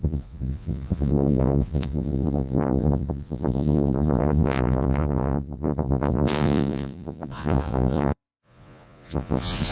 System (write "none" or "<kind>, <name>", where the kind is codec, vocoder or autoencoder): vocoder, Vocos